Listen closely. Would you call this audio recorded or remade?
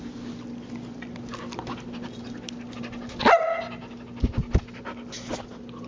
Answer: recorded